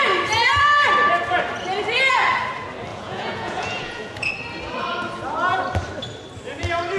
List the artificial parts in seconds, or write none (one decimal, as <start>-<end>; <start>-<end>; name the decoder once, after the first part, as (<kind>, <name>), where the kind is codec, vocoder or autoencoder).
2.9-4.3 (vocoder, Vocos)